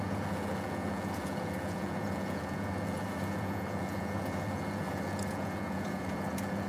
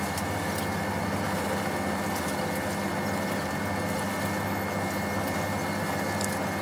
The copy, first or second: first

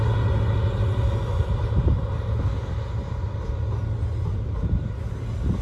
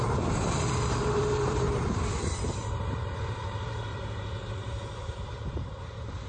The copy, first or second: second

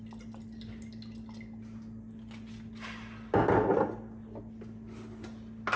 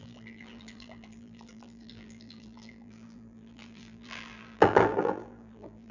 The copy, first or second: second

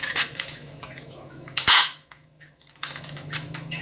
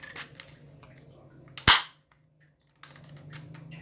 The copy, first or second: first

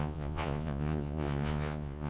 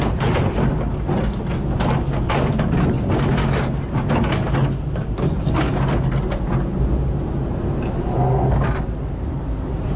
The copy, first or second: first